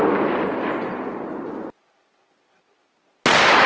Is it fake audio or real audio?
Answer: real